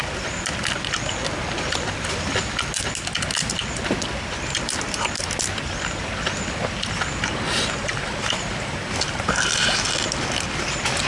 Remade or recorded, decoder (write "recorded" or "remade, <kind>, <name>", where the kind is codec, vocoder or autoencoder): recorded